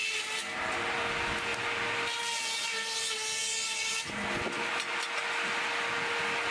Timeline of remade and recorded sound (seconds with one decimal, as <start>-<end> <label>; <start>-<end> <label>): 0.0-6.5 recorded